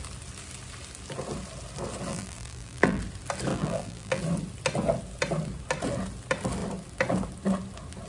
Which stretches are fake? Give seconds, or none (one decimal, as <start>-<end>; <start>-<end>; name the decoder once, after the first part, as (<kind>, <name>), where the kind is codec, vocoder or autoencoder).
2.1-3.0 (vocoder, BigVGAN v2); 3.5-4.2